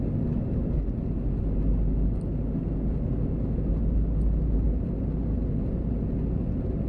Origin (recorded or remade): recorded